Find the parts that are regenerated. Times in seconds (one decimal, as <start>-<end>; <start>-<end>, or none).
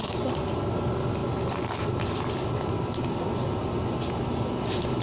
none